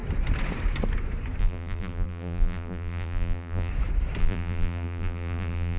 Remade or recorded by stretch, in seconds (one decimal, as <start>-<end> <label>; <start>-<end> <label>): 0.0-1.4 recorded; 1.4-3.7 remade; 3.7-4.2 recorded; 4.2-5.8 remade